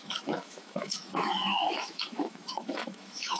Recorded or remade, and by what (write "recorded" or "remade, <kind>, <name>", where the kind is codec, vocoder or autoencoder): remade, autoencoder, DAC-VAE